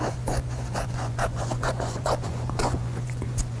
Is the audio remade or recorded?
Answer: remade